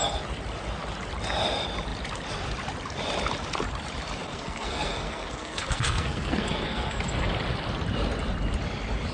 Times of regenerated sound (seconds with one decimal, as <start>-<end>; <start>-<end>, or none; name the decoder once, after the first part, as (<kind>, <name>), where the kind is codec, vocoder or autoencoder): 4.3-7.1 (codec, SNAC)